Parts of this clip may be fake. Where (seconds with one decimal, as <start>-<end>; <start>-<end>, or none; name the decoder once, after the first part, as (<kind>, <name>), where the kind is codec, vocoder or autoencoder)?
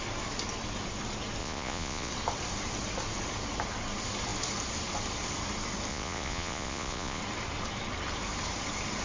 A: 1.4-2.1 (vocoder, Vocos); 5.9-7.2